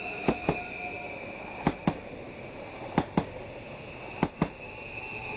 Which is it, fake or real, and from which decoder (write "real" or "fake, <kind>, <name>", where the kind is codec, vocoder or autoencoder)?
real